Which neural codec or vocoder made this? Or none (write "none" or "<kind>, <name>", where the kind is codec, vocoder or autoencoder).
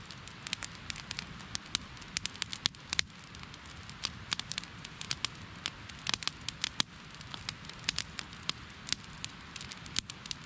none